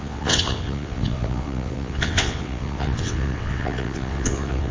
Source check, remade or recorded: remade